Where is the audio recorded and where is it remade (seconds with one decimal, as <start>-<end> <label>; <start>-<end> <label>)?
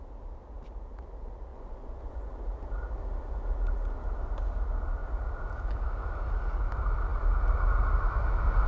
0.0-1.5 recorded; 1.5-2.3 remade; 2.3-8.7 recorded